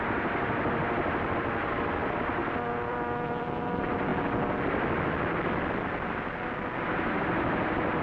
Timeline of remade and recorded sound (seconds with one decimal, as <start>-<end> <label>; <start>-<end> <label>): 0.0-2.4 remade; 2.4-2.9 recorded; 2.9-4.1 remade; 4.1-7.2 recorded; 7.2-8.0 remade